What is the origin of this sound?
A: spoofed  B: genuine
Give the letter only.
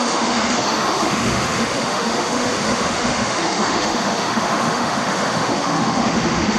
A